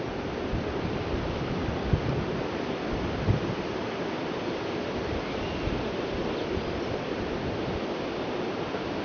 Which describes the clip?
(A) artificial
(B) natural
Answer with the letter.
A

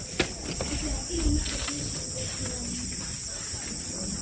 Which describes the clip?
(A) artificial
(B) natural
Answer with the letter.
B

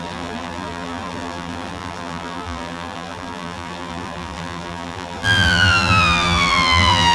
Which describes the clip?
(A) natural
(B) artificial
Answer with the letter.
B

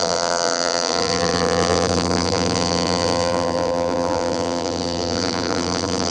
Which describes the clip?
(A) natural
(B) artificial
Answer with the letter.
B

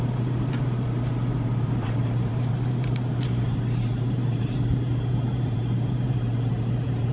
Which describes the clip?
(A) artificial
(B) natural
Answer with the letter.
A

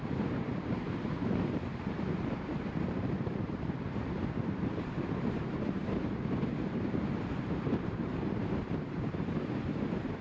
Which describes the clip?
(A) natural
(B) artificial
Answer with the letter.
B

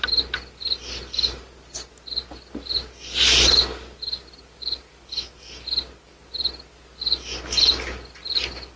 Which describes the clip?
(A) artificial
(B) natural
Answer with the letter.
B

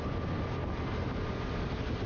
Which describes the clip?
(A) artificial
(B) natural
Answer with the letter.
B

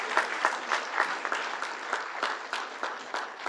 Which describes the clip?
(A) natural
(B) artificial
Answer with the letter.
A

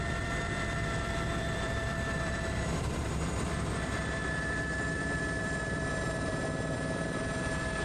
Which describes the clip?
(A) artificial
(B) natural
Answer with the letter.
A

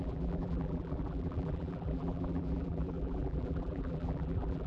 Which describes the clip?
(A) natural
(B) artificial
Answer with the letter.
B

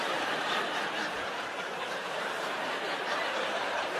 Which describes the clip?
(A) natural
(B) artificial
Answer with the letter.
B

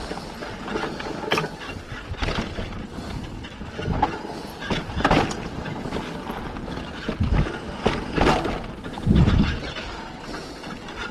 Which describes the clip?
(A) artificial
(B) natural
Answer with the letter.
B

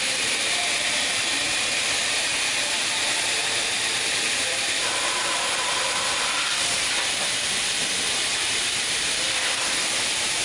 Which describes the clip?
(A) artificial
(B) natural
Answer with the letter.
A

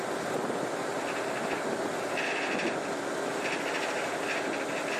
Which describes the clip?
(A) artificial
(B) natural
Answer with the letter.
B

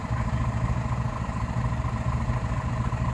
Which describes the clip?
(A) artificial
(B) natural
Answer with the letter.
B